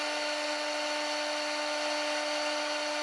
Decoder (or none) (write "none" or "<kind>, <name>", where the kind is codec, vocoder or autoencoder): none